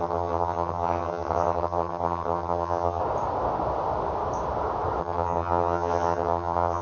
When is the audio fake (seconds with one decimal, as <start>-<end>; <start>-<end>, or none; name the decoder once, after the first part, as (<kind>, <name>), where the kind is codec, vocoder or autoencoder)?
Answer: 0.0-3.0 (vocoder, HiFi-GAN); 5.0-6.8